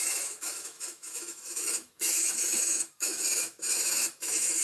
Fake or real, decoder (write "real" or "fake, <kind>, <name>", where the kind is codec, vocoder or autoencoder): fake, autoencoder, DAC-VAE